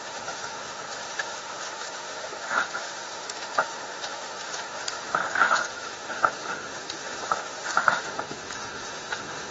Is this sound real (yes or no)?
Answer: no